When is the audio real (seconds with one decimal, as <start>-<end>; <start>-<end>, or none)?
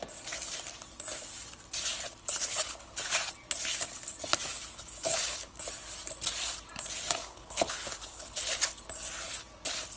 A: 0.0-2.2; 3.0-4.7; 5.6-7.2; 8.5-10.0